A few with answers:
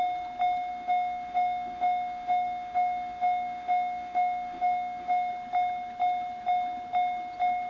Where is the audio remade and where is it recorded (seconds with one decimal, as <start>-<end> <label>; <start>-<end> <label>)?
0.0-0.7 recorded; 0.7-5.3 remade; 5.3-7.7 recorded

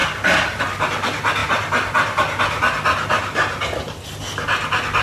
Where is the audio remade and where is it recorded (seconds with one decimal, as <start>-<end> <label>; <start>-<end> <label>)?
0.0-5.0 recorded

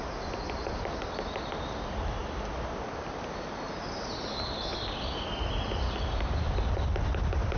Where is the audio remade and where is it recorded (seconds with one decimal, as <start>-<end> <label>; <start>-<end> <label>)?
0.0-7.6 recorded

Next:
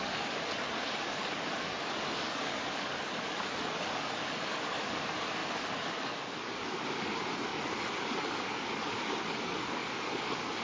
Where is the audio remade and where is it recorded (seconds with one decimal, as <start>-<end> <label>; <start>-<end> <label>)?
0.0-10.6 remade

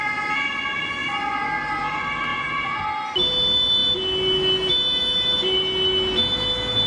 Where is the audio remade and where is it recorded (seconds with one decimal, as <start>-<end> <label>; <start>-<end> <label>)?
0.0-2.3 recorded; 2.3-2.8 remade; 2.8-6.9 recorded

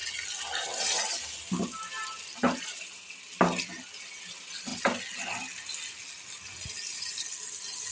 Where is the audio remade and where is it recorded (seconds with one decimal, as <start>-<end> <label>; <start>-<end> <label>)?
0.0-7.9 recorded

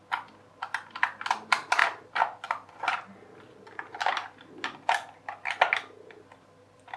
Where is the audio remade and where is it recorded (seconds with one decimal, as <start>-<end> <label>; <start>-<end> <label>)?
0.0-7.0 recorded

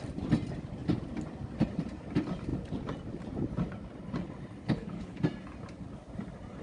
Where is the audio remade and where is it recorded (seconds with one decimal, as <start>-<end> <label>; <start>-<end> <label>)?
0.0-4.6 recorded; 4.6-5.2 remade; 5.2-6.6 recorded